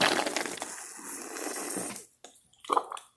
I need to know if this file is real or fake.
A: real